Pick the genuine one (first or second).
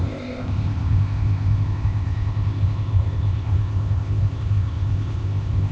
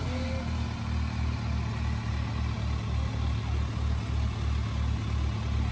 second